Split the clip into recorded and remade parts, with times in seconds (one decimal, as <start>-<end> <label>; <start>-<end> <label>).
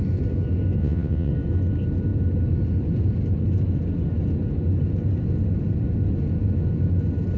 0.0-0.8 recorded; 0.8-1.3 remade; 1.3-7.4 recorded